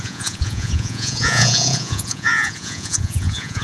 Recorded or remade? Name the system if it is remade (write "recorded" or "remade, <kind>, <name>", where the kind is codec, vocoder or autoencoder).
remade, vocoder, Vocos